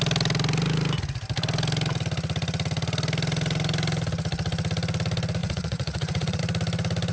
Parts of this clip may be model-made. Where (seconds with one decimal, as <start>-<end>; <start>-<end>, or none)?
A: 5.4-6.4